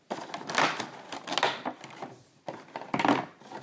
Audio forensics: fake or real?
real